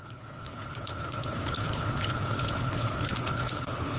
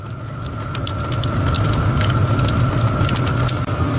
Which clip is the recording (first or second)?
second